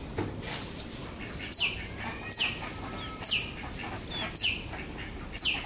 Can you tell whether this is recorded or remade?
recorded